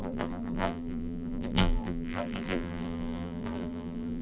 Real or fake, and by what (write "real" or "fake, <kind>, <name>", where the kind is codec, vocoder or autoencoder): fake, vocoder, BigVGAN v2